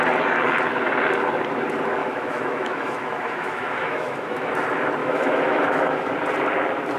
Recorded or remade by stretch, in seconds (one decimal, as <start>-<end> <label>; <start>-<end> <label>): 0.0-2.0 recorded; 2.0-4.5 remade; 4.5-5.0 recorded; 5.0-6.1 remade; 6.1-7.0 recorded